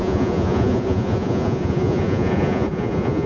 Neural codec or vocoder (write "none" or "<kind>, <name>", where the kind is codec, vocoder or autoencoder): vocoder, Vocos